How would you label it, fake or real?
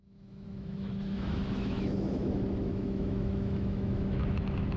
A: fake